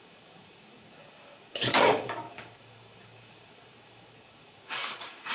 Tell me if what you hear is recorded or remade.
remade